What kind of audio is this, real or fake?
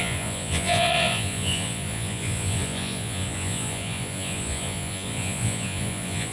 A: fake